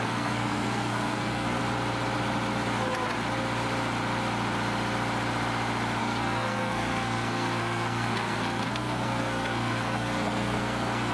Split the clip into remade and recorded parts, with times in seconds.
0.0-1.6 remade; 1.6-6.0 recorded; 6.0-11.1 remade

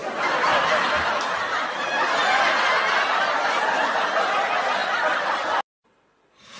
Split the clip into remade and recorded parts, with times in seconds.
0.0-6.6 recorded